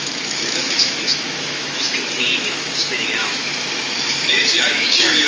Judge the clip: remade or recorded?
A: remade